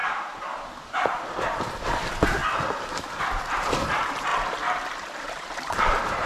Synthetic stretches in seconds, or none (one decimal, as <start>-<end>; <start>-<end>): 0.0-2.4; 3.2-4.3; 5.2-6.3